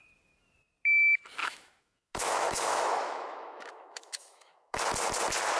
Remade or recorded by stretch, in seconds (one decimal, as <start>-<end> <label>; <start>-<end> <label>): 0.0-1.4 recorded; 1.4-4.8 remade; 4.8-5.6 recorded